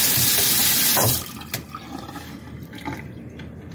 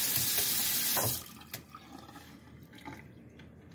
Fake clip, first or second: first